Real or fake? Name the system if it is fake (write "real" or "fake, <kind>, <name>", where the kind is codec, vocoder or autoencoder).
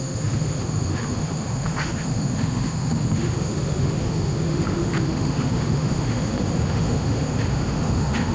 fake, autoencoder, DAC-VAE